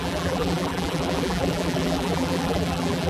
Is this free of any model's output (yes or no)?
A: no